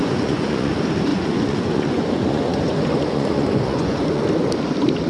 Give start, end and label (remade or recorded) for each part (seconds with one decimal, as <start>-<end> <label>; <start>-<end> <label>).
0.0-0.7 remade; 0.7-1.1 recorded; 1.1-4.2 remade; 4.2-5.1 recorded